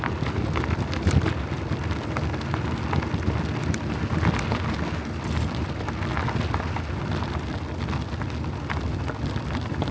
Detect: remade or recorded recorded